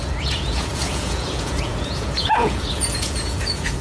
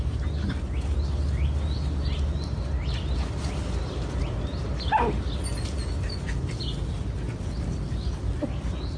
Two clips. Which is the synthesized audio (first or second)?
first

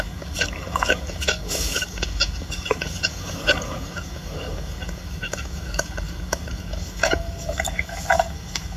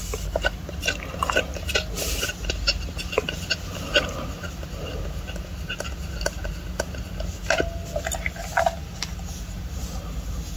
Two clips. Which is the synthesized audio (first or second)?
first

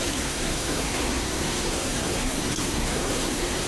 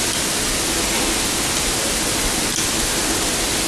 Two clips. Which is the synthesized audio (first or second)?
first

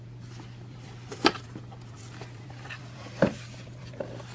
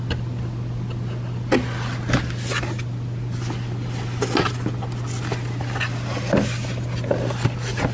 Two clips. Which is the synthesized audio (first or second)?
first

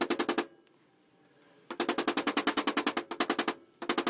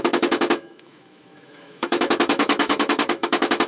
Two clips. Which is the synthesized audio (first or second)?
second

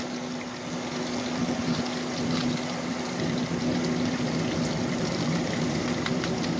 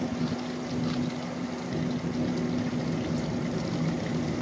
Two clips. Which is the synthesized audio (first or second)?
first